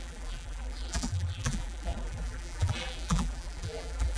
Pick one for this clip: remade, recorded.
remade